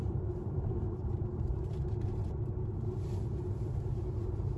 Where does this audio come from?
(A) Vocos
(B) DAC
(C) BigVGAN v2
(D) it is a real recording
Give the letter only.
C